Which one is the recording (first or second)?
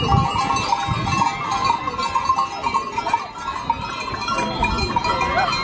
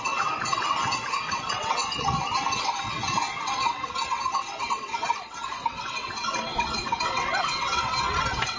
first